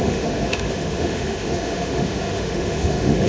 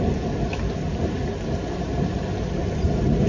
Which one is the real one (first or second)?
second